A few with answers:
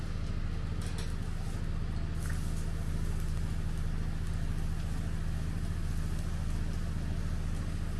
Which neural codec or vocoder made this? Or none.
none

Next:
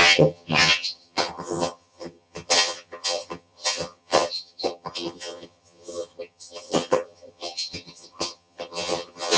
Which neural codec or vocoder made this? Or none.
vocoder, HiFi-GAN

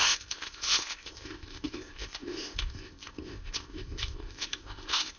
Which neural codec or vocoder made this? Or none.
codec, ZipCodec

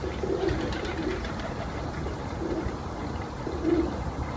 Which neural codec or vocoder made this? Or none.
vocoder, BigVGAN v2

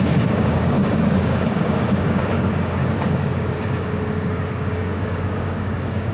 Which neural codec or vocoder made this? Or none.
codec, DAC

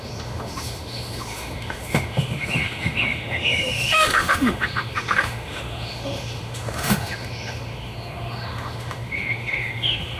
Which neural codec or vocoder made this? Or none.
autoencoder, DAC-VAE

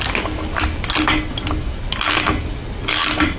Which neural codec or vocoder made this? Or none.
none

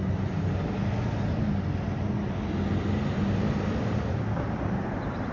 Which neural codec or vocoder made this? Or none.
none